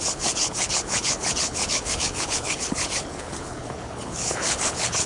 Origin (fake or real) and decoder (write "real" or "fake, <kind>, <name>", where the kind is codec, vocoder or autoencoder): fake, codec, HILCodec